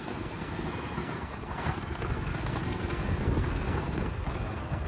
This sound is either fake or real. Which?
fake